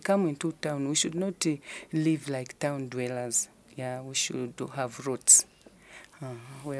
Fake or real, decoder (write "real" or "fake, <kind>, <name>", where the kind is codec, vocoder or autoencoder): real